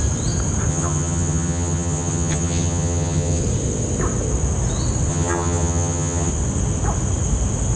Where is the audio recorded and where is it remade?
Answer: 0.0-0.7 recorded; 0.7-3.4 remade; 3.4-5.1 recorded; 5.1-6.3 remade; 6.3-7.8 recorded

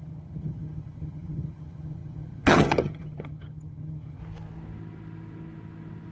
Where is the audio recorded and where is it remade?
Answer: 0.0-4.2 remade; 4.2-6.1 recorded

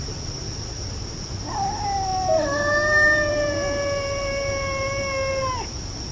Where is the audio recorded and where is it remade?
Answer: 0.0-6.1 recorded

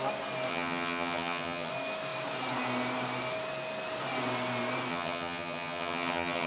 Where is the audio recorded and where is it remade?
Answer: 0.0-0.5 recorded; 0.5-1.7 remade; 1.7-4.9 recorded; 4.9-6.5 remade

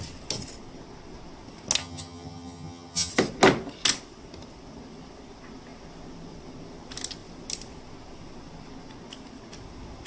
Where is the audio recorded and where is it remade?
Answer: 0.0-1.8 recorded; 1.8-3.1 remade; 3.1-10.1 recorded

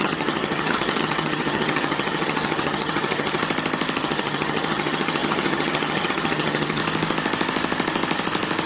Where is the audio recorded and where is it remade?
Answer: 0.0-3.4 remade; 3.4-4.0 recorded; 4.0-6.8 remade; 6.8-8.7 recorded